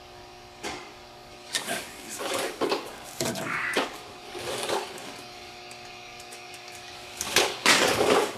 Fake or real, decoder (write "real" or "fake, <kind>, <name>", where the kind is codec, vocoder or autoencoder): fake, codec, DAC